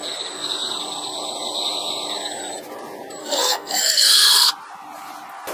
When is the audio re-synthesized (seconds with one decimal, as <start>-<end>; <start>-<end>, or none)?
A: 3.2-4.5